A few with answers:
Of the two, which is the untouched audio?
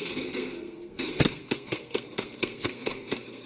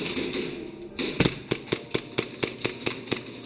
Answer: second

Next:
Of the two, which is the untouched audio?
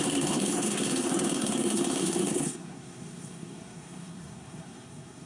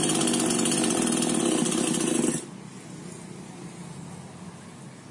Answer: second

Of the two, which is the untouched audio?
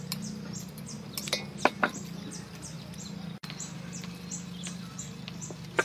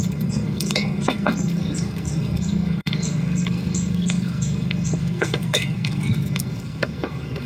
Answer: first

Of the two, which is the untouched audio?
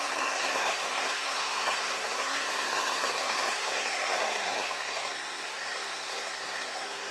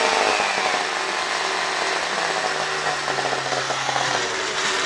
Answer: second